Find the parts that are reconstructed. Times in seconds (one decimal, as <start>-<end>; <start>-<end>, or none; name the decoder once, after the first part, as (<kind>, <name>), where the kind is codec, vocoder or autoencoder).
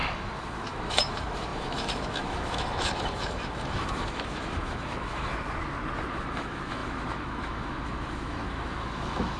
0.0-5.3 (autoencoder, DAC-VAE); 6.1-9.4